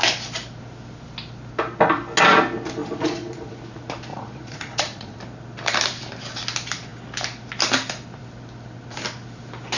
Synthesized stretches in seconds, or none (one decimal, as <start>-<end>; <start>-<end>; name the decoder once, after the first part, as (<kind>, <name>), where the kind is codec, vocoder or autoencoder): 2.8-3.5 (vocoder, Vocos); 4.1-5.2